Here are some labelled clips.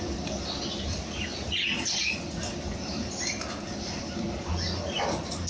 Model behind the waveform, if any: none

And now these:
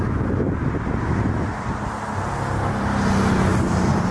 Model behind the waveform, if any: none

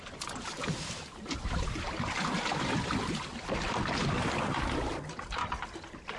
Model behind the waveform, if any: none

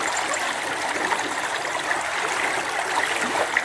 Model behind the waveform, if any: none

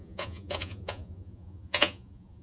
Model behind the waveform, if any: vocoder, Vocos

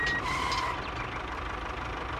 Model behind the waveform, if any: none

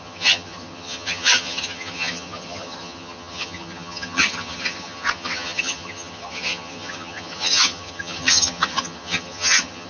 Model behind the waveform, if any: vocoder, HiFi-GAN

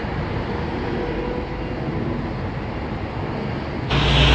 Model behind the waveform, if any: none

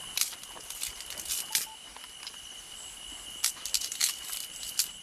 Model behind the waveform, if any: none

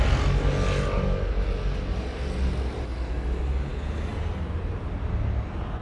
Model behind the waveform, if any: none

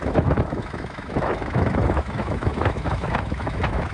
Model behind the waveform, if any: autoencoder, DAC-VAE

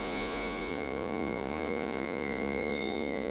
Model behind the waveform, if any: vocoder, Vocos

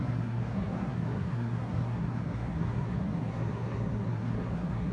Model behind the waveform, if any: codec, SNAC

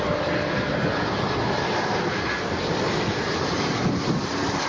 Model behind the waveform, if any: none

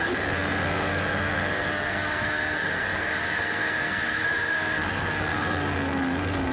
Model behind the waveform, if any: codec, SNAC